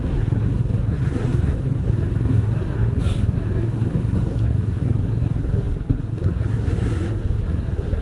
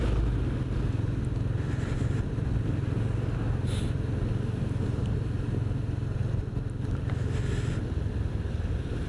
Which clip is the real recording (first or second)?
second